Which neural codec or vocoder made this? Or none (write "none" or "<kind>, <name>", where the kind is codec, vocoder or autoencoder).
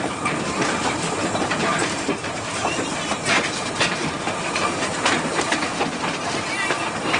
vocoder, BigVGAN v2